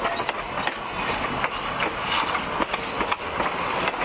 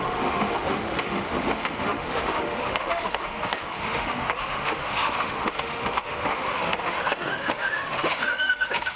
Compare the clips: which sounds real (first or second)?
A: first